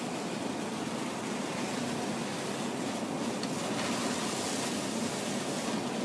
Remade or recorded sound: recorded